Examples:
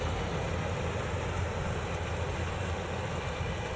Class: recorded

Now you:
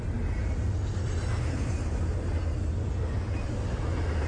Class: recorded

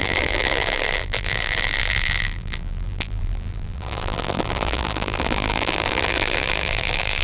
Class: remade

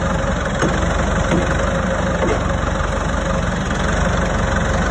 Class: recorded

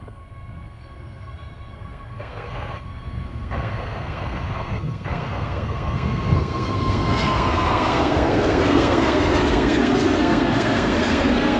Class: remade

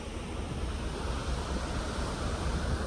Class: recorded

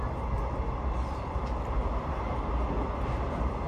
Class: recorded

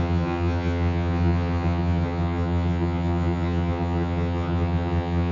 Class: remade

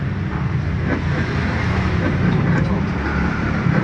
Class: recorded